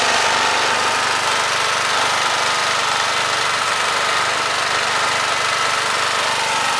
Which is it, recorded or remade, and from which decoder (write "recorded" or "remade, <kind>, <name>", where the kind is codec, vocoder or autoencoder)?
recorded